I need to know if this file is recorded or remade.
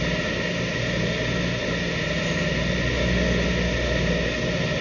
recorded